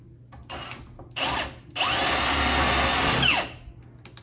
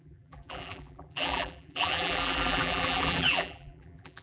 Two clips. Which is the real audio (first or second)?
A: first